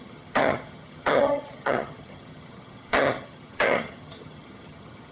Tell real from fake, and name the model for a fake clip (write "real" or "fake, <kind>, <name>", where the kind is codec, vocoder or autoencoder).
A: fake, vocoder, HiFi-GAN